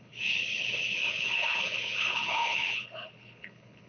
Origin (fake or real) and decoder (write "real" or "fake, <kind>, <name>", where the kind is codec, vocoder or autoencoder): fake, codec, HILCodec